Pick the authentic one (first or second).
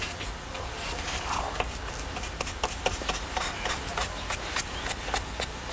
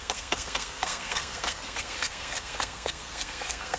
first